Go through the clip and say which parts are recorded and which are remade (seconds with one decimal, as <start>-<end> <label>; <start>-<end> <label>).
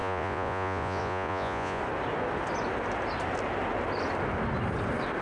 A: 0.0-1.8 remade; 1.8-5.2 recorded